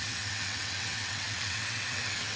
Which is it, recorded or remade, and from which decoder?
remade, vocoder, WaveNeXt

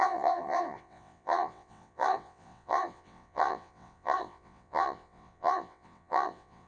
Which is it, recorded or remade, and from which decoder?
remade, vocoder, WaveNeXt